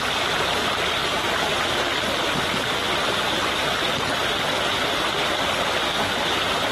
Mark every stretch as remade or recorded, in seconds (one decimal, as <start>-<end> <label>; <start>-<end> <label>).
0.0-6.7 recorded